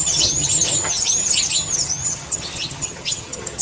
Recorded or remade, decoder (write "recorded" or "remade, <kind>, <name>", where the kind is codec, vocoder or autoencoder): remade, vocoder, HiFi-GAN